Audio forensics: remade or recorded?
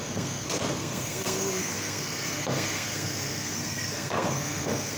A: remade